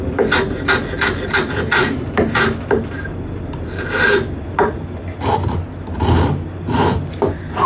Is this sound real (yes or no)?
yes